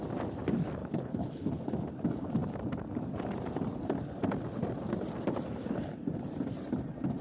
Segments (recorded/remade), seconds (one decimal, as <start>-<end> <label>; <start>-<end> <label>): 0.0-0.8 recorded; 0.8-1.6 remade; 1.6-7.2 recorded